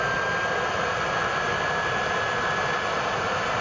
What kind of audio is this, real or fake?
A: real